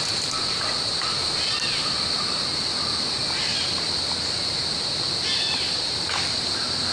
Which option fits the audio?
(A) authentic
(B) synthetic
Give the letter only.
A